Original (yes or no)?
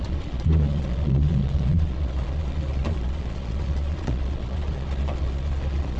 no